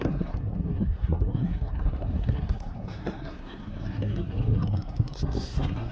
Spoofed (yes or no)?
yes